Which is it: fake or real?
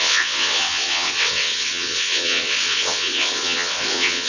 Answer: fake